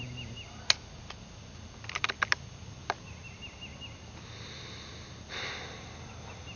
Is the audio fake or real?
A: real